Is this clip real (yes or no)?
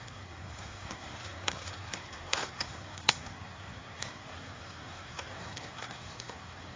no